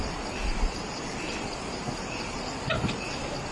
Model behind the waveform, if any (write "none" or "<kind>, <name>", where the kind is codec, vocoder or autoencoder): none